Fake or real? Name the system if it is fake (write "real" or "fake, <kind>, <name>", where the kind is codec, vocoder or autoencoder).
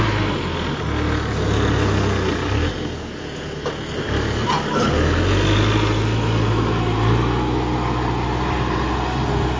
real